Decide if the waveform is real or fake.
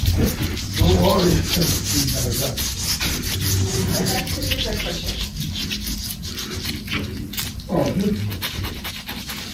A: real